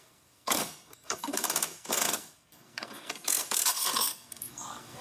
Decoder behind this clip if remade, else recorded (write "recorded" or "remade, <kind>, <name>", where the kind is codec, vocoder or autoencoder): remade, codec, SNAC